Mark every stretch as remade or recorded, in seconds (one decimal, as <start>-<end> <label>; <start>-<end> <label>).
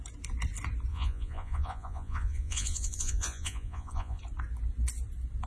0.0-0.9 recorded; 0.9-4.2 remade; 4.2-5.5 recorded